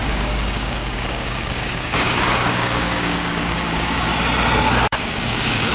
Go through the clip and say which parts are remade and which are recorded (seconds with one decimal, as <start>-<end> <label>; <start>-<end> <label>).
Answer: 0.0-4.1 remade; 4.1-4.9 recorded; 4.9-5.7 remade